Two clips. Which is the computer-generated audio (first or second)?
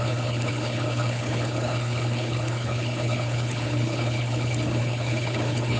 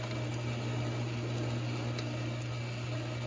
first